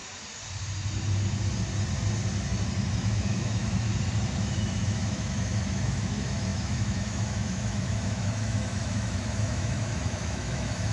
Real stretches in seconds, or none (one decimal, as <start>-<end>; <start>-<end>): 0.0-2.9; 3.9-4.4